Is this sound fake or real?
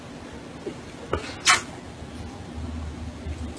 real